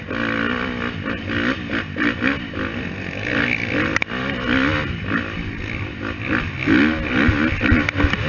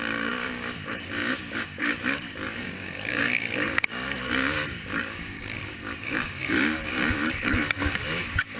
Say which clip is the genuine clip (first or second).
first